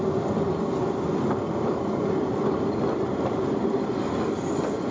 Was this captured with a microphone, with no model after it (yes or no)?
yes